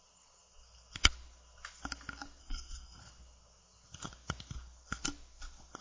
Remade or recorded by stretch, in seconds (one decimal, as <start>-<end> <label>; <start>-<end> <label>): 0.0-2.4 recorded; 2.4-3.0 remade; 3.0-5.8 recorded